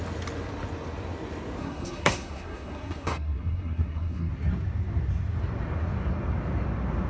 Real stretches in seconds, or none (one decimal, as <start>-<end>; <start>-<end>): 0.0-1.6; 4.3-7.1